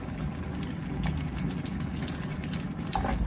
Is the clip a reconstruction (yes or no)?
no